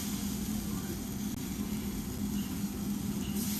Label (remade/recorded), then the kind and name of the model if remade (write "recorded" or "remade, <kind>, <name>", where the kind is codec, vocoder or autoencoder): recorded